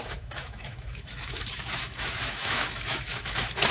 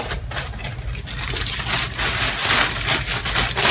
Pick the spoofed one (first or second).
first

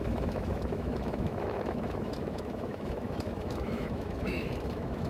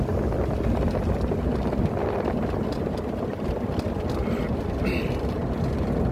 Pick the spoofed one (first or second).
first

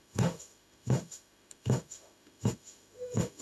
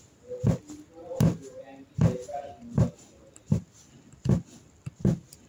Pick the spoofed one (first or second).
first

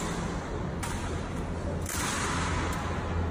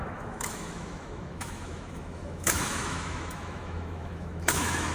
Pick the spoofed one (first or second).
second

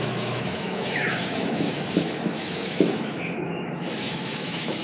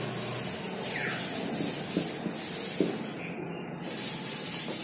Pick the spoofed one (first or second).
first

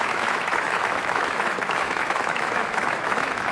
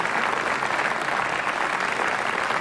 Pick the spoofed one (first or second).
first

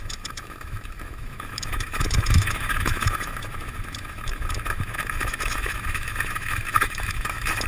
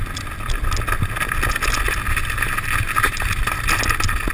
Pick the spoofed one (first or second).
first